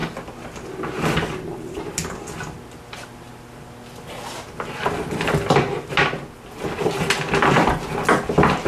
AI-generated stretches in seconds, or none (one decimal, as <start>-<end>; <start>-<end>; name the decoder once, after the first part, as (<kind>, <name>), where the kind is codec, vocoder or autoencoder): none